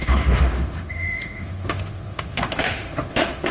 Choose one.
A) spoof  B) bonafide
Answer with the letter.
A